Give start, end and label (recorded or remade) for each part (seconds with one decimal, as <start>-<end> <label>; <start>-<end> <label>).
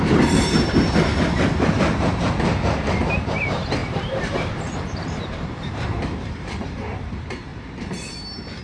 0.0-1.1 remade; 1.1-1.8 recorded; 1.8-7.5 remade; 7.5-8.6 recorded